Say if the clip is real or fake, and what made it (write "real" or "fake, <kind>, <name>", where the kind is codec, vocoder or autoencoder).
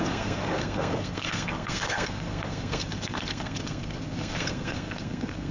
fake, codec, SNAC